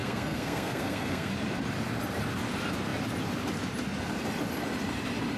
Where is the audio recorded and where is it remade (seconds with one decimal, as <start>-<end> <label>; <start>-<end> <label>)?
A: 0.0-1.3 remade; 1.3-5.4 recorded